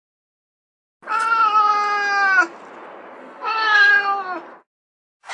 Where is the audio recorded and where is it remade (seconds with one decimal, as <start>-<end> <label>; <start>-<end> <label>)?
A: 0.0-0.4 remade; 0.4-3.2 recorded; 3.2-3.9 remade; 3.9-5.3 recorded